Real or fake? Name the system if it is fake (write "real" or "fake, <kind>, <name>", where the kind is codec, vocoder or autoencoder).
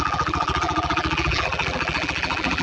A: fake, vocoder, BigVGAN v2